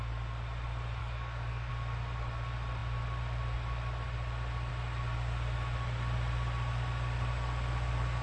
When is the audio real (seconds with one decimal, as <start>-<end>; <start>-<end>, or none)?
0.0-1.0; 1.7-8.2